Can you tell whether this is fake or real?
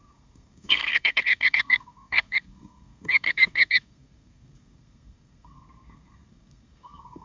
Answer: fake